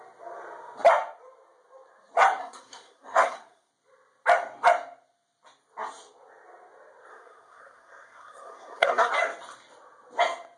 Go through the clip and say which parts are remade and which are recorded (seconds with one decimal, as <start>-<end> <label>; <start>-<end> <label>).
0.0-2.4 recorded; 2.4-3.7 remade; 3.7-7.1 recorded; 7.1-9.1 remade; 9.1-10.6 recorded